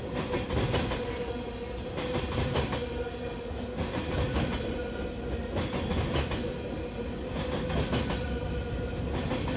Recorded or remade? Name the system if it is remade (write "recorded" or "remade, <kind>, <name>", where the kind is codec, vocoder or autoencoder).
recorded